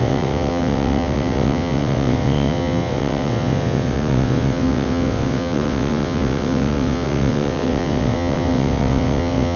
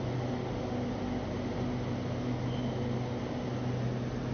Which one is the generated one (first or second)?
first